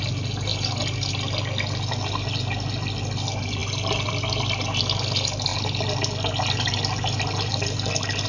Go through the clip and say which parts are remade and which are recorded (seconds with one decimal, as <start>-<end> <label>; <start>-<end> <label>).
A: 0.0-8.3 recorded